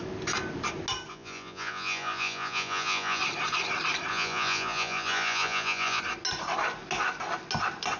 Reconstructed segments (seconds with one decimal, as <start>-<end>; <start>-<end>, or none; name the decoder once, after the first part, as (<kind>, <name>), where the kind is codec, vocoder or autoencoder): 1.1-3.2 (vocoder, Vocos); 4.1-6.0